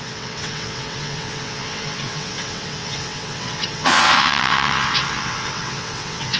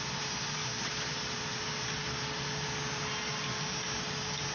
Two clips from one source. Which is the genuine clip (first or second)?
second